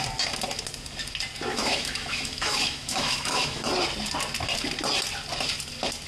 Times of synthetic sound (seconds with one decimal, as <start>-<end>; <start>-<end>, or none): 1.5-3.7